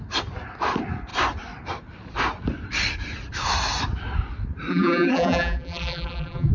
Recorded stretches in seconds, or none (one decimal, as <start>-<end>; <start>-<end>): 0.0-4.7